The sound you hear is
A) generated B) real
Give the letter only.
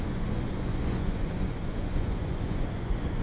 A